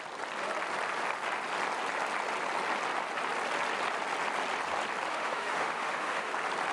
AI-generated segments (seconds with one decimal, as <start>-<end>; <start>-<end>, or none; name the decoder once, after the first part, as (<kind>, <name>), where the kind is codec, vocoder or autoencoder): 5.1-6.3 (autoencoder, DAC-VAE)

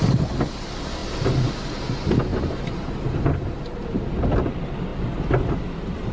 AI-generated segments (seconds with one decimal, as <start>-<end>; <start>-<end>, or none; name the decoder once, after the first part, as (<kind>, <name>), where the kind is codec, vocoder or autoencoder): 4.9-6.1 (vocoder, BigVGAN v2)

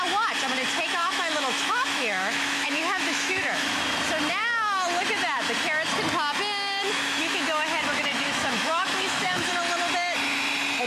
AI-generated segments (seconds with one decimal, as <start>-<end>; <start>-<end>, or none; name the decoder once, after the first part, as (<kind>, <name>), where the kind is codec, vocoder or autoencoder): 1.0-3.8 (autoencoder, DAC-VAE); 4.3-5.0; 6.8-9.5

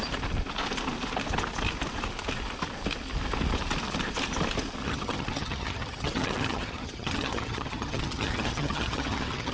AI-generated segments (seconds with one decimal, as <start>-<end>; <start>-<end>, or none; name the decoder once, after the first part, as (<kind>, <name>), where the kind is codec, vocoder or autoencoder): 4.8-9.5 (vocoder, HiFi-GAN)

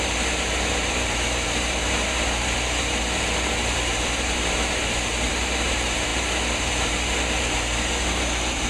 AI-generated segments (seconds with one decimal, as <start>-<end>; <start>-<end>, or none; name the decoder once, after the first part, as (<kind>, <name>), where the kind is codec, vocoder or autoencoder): 0.0-8.7 (vocoder, BigVGAN v2)

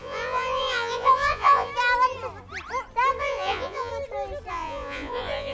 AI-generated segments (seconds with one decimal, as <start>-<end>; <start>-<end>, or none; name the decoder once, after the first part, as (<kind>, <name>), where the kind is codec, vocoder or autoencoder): 0.0-1.7 (vocoder, Vocos); 3.2-3.9; 4.5-5.5

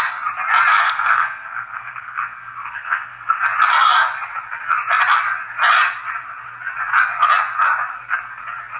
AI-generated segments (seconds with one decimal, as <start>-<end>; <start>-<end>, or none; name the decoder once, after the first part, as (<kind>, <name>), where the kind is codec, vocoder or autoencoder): 0.8-3.4 (codec, SNAC)

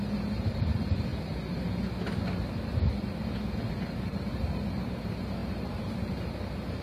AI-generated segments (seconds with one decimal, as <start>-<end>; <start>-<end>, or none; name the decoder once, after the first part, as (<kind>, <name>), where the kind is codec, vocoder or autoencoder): 0.0-1.1 (vocoder, BigVGAN v2); 3.7-6.8